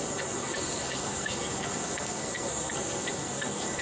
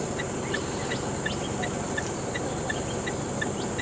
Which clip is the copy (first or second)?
first